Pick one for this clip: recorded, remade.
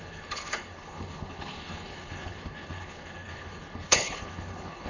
remade